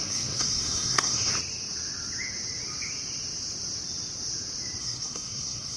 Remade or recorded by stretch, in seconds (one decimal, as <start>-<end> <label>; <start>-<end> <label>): 0.0-1.3 remade; 1.3-4.8 recorded; 4.8-5.8 remade